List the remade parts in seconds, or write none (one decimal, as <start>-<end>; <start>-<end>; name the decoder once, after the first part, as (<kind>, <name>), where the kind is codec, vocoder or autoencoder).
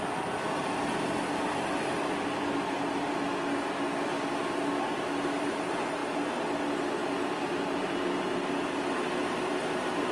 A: none